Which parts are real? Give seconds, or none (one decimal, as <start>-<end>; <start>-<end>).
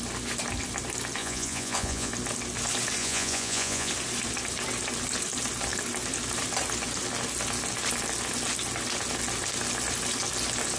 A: 0.0-1.2; 2.1-3.0; 3.9-10.8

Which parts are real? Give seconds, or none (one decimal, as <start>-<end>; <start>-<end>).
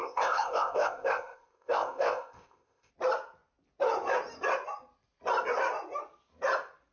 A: 2.9-6.9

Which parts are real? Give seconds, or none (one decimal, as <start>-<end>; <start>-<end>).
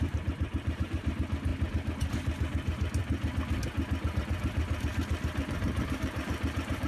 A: 1.5-2.1; 3.0-4.1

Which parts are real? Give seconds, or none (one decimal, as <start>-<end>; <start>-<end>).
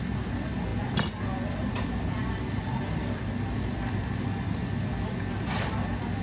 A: 0.0-6.2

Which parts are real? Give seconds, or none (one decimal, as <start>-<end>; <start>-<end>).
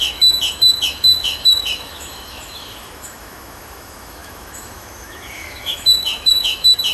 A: none